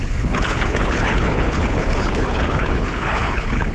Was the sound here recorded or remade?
remade